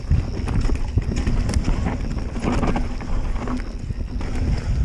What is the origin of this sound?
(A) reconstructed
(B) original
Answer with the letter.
B